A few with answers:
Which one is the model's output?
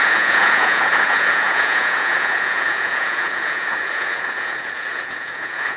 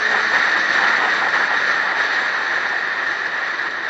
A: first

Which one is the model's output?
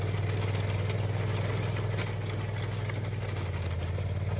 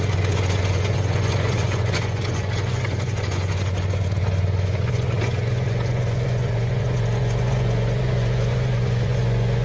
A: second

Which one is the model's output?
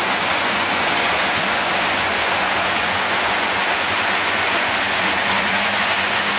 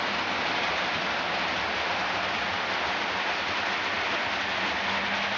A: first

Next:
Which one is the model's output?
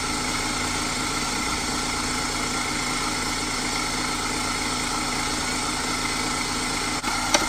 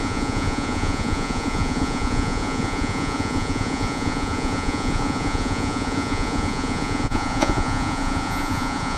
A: second